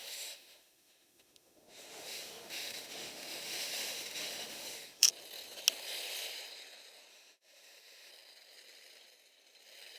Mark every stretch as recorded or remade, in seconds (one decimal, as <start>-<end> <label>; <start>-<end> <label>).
0.0-5.1 remade; 5.1-7.1 recorded; 7.1-8.1 remade; 8.1-10.0 recorded